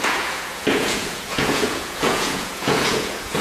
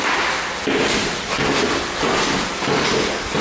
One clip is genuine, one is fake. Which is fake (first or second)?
first